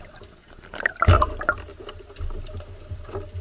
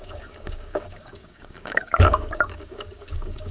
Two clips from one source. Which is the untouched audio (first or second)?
first